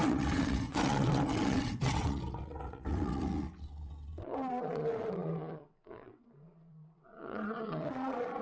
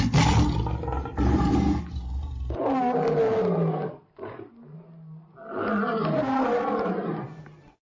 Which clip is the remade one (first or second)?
first